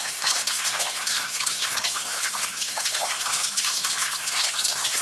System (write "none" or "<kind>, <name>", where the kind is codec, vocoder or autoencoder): codec, SNAC